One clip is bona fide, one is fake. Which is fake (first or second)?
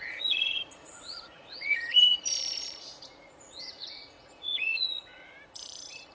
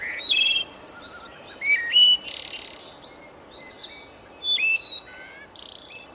first